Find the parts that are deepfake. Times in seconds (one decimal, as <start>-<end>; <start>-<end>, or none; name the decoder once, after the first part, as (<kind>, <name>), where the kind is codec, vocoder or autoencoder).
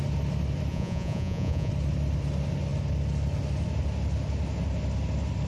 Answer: 0.7-1.7 (vocoder, Vocos)